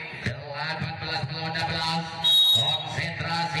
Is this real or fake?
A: real